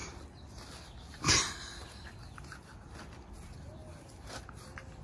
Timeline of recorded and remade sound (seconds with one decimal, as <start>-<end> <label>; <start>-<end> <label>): 0.0-5.0 recorded